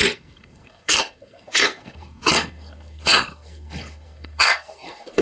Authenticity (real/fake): fake